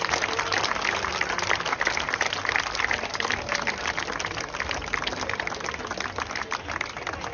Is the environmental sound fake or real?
real